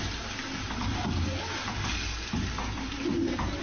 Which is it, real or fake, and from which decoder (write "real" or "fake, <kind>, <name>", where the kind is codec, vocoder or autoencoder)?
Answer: real